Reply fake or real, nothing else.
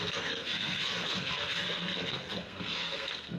fake